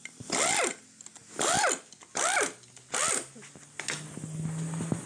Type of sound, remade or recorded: recorded